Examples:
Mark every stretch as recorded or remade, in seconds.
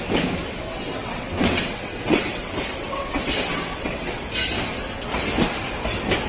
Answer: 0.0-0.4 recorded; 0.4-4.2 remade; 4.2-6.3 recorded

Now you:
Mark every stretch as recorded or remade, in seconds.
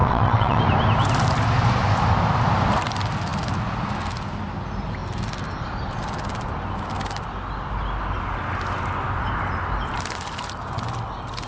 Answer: 0.0-0.6 remade; 0.6-11.5 recorded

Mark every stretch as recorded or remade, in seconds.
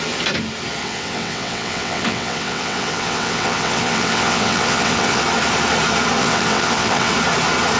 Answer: 0.0-0.8 recorded; 0.8-5.2 remade; 5.2-6.2 recorded; 6.2-7.1 remade; 7.1-7.8 recorded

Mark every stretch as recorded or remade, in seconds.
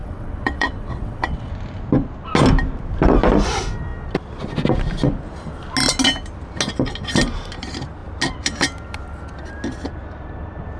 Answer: 0.0-1.5 remade; 1.5-10.8 recorded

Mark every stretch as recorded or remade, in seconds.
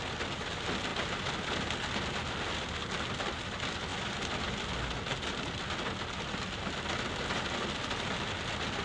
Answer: 0.0-8.8 recorded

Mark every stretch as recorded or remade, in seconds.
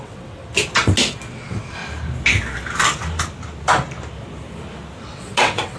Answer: 0.0-0.4 remade; 0.4-1.3 recorded; 1.3-1.8 remade; 1.8-5.0 recorded; 5.0-5.8 remade